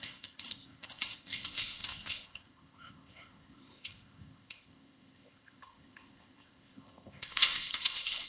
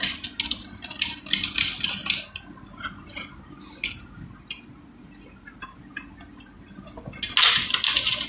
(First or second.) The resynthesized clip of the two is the first